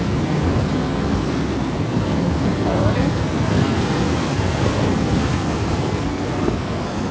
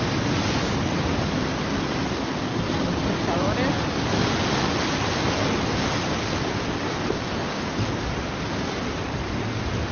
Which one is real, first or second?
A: second